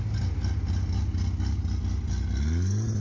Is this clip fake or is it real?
real